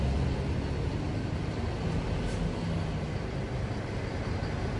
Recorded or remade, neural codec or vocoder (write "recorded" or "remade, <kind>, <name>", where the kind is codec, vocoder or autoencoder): recorded